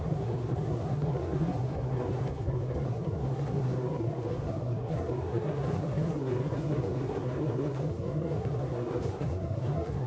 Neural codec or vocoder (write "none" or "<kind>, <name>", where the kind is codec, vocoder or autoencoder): codec, SNAC